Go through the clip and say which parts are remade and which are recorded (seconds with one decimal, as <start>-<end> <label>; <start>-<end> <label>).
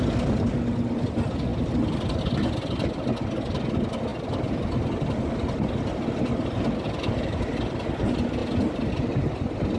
0.0-9.8 recorded